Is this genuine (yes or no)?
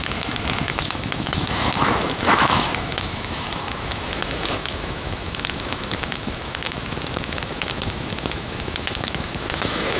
no